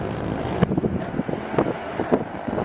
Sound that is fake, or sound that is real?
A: real